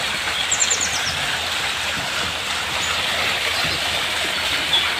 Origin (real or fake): real